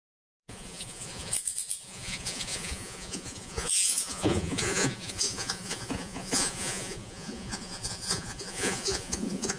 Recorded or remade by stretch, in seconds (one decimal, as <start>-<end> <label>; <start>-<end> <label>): 0.0-9.6 remade